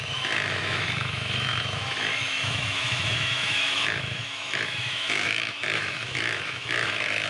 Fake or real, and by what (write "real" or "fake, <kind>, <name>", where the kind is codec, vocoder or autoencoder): fake, autoencoder, DAC-VAE